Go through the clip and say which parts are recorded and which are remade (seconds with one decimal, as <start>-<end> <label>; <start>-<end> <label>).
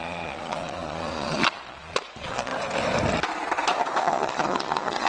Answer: 0.0-2.5 remade; 2.5-4.0 recorded; 4.0-5.1 remade